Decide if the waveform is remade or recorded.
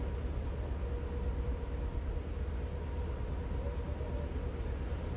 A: recorded